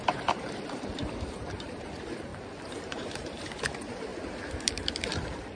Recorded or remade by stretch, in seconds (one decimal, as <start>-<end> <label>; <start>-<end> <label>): 0.0-2.3 remade; 2.3-2.8 recorded; 2.8-4.1 remade; 4.1-4.6 recorded; 4.6-5.6 remade